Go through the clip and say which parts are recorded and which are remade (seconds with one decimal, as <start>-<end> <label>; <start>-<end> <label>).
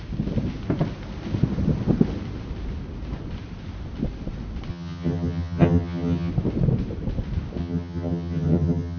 0.0-4.7 recorded; 4.7-6.3 remade; 6.3-7.6 recorded; 7.6-9.0 remade